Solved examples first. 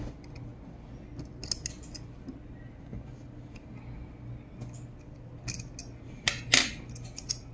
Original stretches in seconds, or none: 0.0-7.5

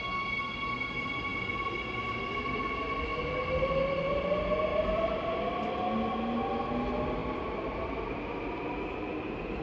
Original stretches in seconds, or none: 0.0-1.3; 2.2-3.1; 4.1-4.7; 5.5-7.2; 8.2-9.6

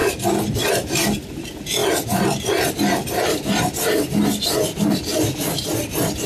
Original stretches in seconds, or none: 0.0-0.7; 1.8-2.7

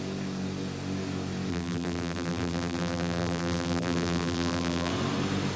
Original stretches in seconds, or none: 0.0-1.5; 4.9-5.6